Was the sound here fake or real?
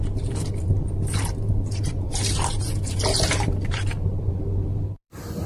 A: fake